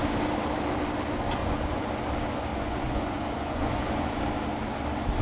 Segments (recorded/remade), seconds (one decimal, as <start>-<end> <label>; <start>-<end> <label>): 0.0-1.4 recorded; 1.4-1.9 remade; 1.9-2.5 recorded; 2.5-4.2 remade; 4.2-5.2 recorded